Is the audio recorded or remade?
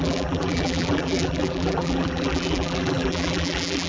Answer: remade